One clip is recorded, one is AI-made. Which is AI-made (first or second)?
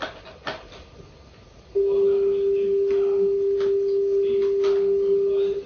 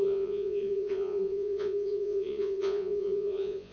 second